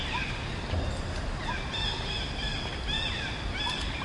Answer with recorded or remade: recorded